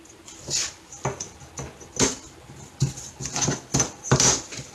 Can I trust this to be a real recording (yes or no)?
yes